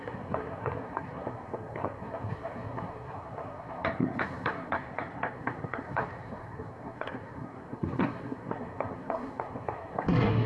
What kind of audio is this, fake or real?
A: fake